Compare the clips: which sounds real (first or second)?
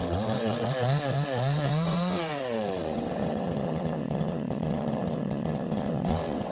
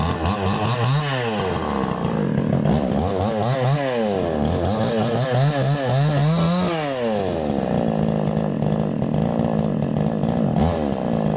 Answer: second